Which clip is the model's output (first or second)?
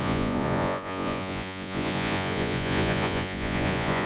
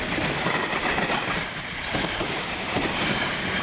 first